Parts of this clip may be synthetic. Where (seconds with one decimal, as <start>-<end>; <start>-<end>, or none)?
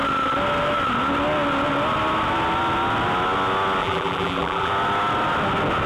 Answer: 3.8-4.7